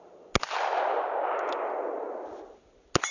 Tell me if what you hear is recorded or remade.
recorded